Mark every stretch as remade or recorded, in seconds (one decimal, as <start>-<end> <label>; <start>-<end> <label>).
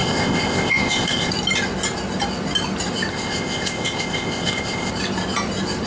0.0-1.3 remade; 1.3-3.1 recorded; 3.1-4.9 remade; 4.9-5.9 recorded